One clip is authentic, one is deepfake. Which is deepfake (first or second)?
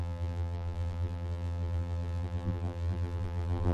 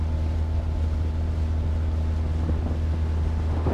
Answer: first